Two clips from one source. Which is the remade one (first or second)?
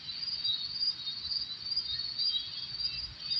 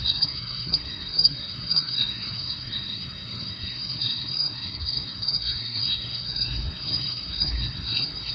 second